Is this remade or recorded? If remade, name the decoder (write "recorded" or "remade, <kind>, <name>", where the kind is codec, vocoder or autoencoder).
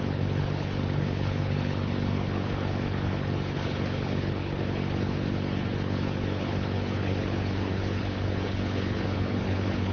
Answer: remade, codec, HILCodec